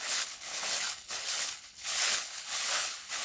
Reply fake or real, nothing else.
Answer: fake